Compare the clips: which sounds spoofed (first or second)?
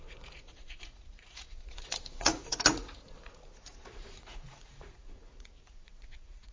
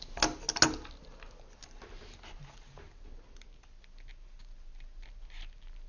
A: first